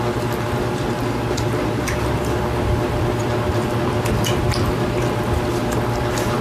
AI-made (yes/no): no